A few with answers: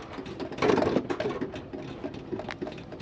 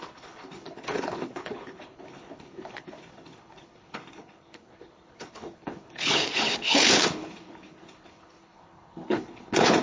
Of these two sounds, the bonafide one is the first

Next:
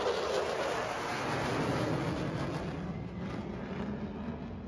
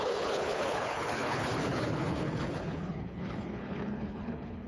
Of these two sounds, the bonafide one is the first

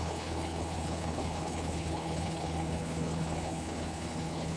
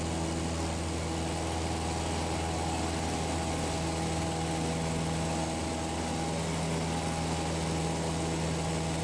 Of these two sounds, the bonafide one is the second